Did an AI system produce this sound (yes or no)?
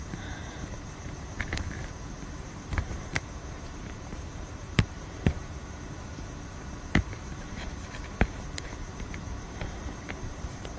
yes